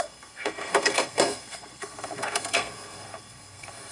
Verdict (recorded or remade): remade